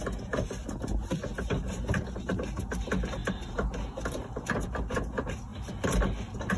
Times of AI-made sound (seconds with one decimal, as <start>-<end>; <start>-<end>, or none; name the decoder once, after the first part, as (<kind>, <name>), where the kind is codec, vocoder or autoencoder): none